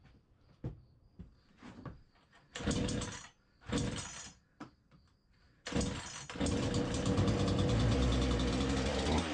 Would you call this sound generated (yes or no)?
no